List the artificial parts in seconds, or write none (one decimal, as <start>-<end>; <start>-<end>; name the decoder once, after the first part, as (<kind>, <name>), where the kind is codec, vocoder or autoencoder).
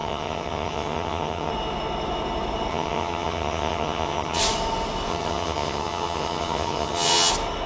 0.0-1.5 (vocoder, HiFi-GAN); 2.7-4.4; 5.1-7.3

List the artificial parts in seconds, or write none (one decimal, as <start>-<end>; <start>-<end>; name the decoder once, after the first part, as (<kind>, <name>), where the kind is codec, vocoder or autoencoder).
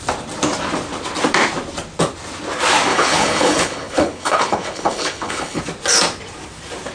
2.9-5.6 (codec, HILCodec)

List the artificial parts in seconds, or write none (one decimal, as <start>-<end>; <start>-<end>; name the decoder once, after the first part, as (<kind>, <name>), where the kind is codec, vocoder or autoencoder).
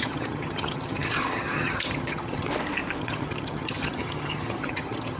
0.0-2.5 (vocoder, HiFi-GAN); 3.0-5.2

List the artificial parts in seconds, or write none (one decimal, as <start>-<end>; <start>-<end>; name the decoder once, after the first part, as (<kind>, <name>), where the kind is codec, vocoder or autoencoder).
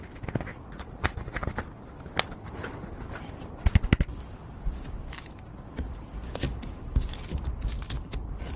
0.5-1.4 (vocoder, Vocos)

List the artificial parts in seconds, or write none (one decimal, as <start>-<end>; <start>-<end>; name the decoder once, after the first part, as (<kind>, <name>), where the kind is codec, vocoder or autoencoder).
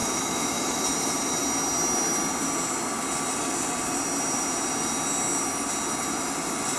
0.0-0.8 (autoencoder, DAC-VAE)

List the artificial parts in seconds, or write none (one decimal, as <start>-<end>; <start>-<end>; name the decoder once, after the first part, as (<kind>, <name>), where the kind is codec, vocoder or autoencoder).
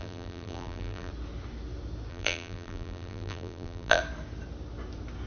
0.0-1.1 (vocoder, BigVGAN v2); 2.1-4.0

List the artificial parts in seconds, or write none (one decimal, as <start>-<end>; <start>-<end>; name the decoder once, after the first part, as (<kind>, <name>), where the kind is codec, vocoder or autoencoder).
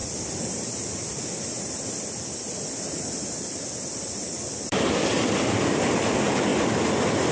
none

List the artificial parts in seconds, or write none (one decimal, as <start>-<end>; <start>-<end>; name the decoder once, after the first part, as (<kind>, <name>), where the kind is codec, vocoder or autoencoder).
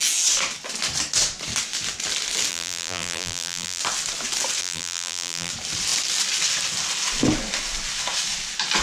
2.5-3.8 (vocoder, BigVGAN v2); 4.6-5.5